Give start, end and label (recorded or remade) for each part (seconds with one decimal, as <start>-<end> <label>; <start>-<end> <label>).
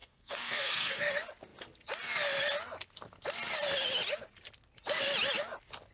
0.0-1.0 remade; 1.0-5.9 recorded